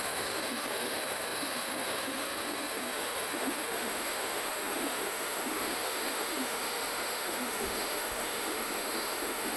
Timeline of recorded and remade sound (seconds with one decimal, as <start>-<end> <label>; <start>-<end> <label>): 0.0-9.6 remade